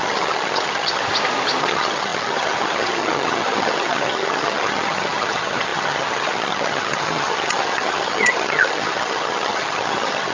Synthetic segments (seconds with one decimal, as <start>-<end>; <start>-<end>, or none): 0.0-1.0; 1.6-10.3